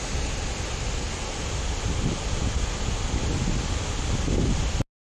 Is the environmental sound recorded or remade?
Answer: recorded